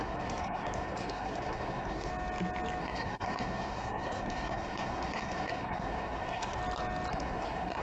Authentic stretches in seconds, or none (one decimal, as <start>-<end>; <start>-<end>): 2.1-2.8; 6.6-7.1